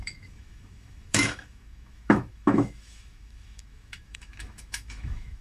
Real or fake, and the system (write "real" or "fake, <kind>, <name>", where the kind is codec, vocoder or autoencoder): fake, autoencoder, DAC-VAE